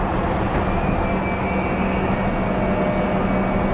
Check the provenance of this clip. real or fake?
real